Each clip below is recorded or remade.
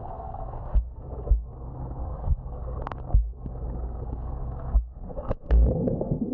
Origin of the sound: remade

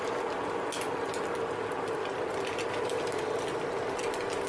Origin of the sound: recorded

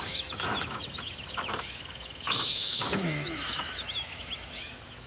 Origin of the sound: remade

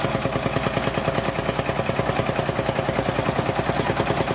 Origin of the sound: recorded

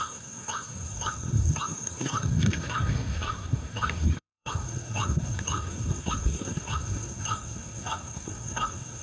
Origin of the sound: remade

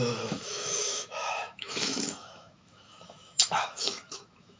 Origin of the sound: remade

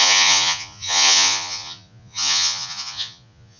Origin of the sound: remade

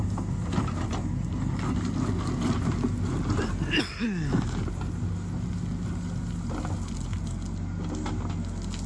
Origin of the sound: recorded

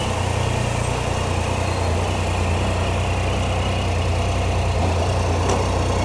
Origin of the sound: recorded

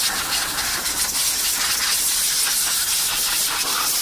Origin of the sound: recorded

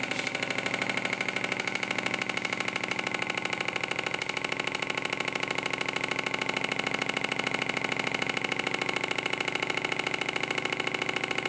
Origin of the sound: recorded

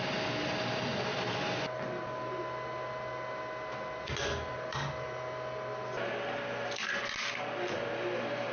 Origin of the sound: recorded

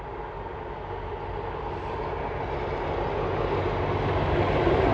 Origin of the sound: recorded